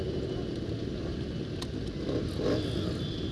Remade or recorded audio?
recorded